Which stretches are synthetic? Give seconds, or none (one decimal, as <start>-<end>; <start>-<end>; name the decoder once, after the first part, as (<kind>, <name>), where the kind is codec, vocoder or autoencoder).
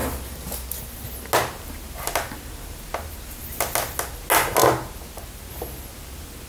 none